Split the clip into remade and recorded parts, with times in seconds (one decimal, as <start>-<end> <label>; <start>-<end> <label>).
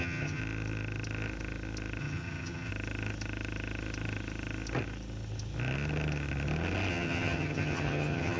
0.0-0.4 remade; 0.4-2.0 recorded; 2.0-2.7 remade; 2.7-6.9 recorded; 6.9-8.4 remade